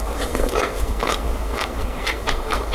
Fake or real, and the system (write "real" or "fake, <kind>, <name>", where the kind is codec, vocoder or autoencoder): fake, codec, SNAC